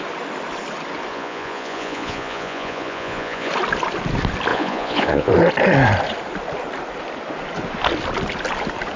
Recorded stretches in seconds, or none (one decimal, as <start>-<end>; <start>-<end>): 0.0-1.1; 3.5-4.5; 5.3-9.0

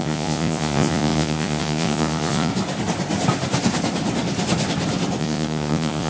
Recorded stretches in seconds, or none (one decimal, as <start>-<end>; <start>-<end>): 2.5-5.2